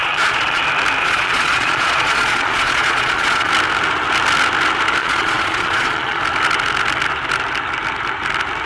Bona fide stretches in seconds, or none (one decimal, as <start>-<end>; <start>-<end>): 0.6-1.0; 3.5-5.0; 6.2-8.7